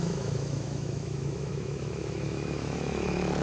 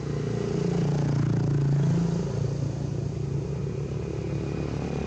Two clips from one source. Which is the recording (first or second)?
second